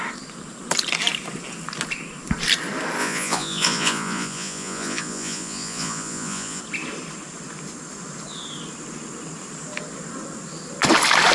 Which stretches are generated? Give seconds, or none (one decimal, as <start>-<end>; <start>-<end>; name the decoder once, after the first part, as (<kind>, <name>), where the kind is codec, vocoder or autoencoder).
3.0-6.6 (vocoder, Vocos)